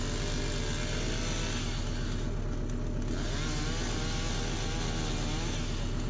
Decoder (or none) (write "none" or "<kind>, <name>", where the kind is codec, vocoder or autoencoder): none